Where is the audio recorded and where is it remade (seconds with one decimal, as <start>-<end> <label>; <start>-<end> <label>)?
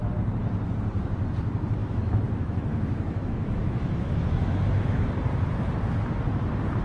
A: 0.0-1.8 recorded; 1.8-5.1 remade; 5.1-6.8 recorded